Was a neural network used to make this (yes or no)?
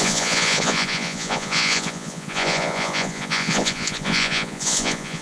yes